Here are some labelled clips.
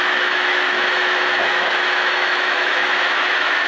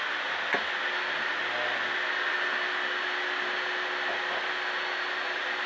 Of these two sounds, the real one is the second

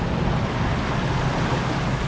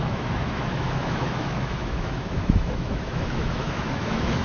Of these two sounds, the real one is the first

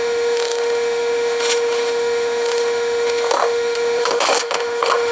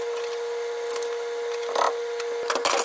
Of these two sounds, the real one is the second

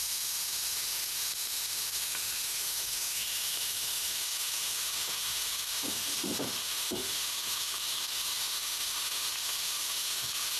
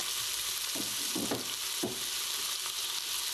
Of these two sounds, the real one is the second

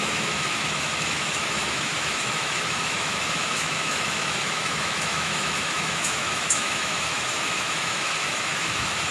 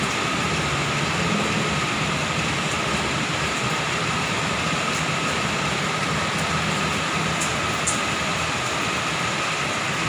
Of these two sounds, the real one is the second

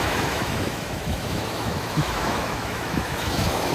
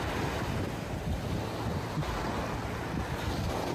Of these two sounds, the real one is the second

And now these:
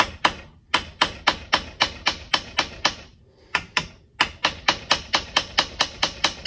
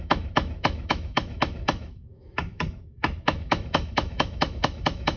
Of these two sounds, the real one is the first